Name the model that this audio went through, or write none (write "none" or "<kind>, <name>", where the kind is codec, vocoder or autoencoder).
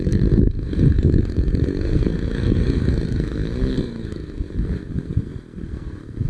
codec, SNAC